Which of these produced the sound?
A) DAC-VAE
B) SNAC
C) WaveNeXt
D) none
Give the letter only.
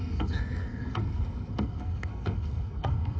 B